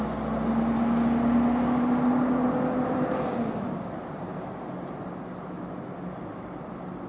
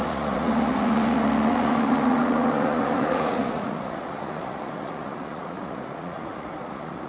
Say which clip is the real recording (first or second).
first